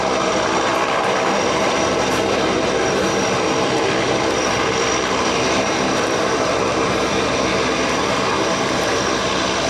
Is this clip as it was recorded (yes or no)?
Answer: no